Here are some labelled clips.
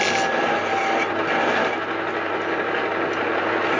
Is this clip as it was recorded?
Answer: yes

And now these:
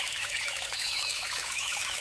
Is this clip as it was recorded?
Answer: no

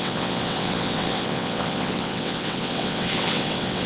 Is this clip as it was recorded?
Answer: no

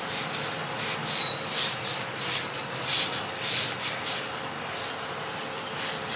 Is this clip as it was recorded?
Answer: yes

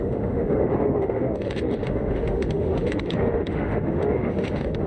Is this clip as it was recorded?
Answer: no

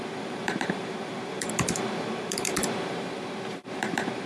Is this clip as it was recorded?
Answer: no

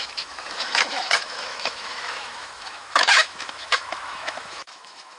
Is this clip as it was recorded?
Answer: no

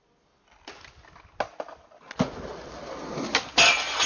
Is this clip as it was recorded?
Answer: yes